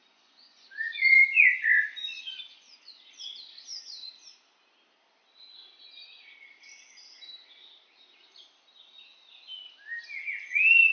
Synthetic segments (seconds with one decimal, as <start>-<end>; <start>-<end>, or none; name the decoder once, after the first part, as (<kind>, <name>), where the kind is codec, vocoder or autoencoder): 0.0-1.6 (vocoder, Vocos); 2.0-3.2